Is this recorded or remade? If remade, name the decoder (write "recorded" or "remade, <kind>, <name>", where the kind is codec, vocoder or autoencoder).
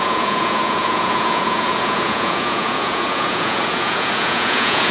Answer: remade, vocoder, Vocos